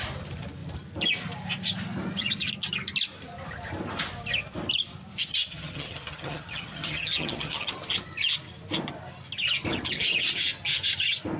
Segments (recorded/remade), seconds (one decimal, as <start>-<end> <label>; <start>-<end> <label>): 0.0-5.3 recorded; 5.3-7.7 remade; 7.7-11.4 recorded